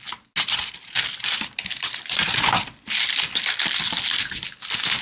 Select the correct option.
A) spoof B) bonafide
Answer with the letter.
B